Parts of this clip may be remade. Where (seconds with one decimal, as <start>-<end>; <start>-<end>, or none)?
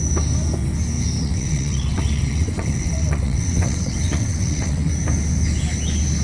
1.2-4.9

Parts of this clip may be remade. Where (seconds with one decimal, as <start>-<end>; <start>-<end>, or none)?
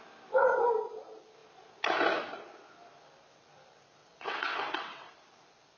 4.0-5.1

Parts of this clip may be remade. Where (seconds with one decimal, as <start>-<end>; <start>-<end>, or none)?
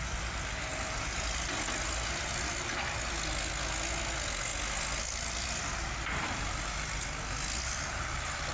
none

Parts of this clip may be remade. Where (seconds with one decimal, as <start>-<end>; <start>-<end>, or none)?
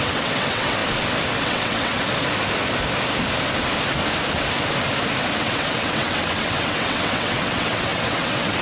0.0-0.8; 1.4-1.9; 5.4-8.6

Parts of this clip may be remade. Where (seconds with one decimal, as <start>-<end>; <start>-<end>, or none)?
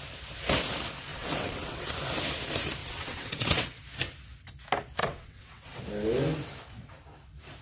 1.1-1.9; 2.8-3.8; 5.0-5.8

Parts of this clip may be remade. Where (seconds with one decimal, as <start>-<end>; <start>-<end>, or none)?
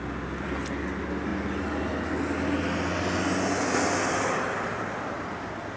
none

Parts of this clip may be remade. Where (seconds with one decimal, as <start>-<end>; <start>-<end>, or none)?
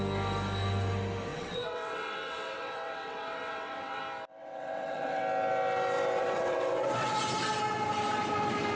1.3-4.0; 4.4-5.2; 6.2-7.2